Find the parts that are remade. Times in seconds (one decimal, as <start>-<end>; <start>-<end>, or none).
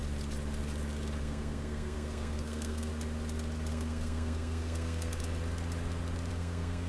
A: 1.2-2.9; 3.7-5.2; 6.3-6.9